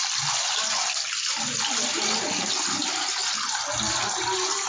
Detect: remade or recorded recorded